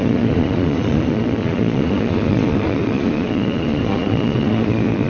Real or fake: fake